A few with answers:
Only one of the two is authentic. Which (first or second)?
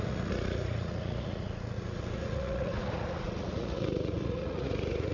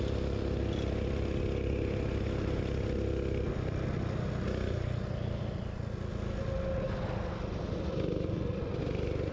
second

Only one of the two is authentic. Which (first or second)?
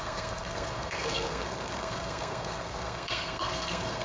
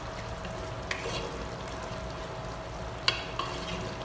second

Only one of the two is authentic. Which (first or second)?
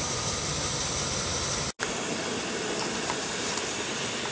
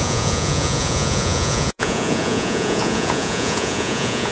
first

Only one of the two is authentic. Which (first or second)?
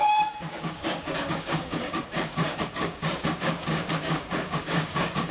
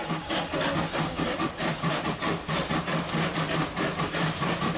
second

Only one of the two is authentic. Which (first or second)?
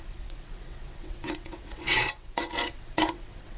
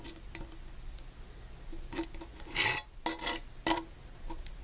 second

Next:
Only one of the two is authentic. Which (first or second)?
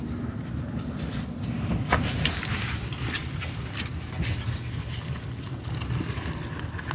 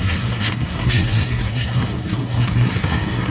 first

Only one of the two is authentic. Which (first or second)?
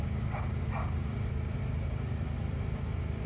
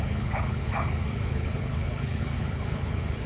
first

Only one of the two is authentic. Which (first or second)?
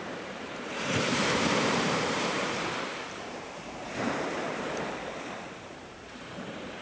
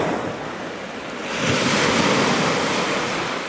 second